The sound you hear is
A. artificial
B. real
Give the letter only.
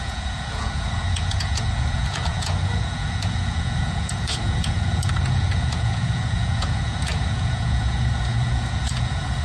A